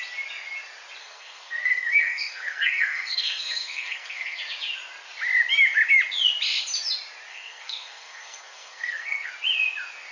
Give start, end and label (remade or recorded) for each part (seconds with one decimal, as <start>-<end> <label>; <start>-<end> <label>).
0.0-1.0 recorded; 1.0-4.4 remade; 4.4-7.3 recorded; 7.3-9.3 remade; 9.3-10.1 recorded